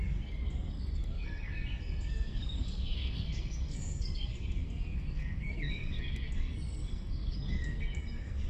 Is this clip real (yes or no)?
no